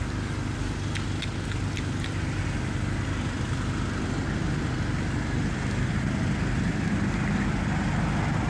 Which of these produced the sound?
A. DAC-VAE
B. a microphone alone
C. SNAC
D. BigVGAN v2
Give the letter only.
B